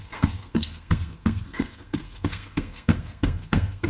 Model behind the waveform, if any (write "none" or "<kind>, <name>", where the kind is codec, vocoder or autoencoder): codec, SNAC